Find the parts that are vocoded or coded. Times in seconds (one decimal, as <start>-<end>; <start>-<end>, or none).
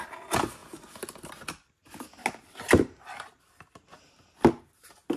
none